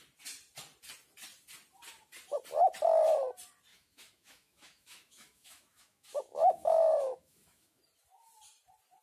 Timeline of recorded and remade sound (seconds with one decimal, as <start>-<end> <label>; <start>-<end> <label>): 0.0-3.7 recorded; 3.7-7.8 remade; 7.8-9.0 recorded